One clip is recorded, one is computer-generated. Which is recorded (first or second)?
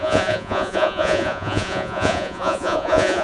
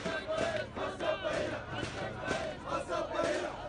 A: second